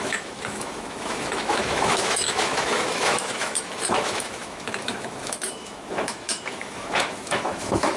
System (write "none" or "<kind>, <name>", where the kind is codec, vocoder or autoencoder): autoencoder, DAC-VAE